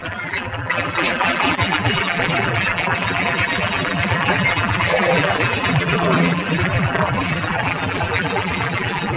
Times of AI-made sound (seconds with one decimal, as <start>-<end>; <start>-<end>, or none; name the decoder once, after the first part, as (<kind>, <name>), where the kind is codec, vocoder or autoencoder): 0.0-9.2 (vocoder, BigVGAN v2)